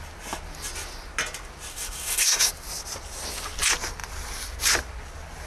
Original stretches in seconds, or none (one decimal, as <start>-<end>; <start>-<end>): 0.0-1.7; 2.5-5.5